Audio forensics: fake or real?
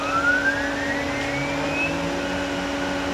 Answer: real